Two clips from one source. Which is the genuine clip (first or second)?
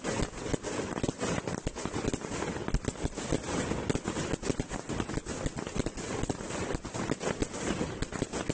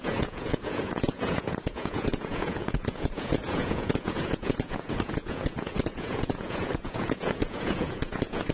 first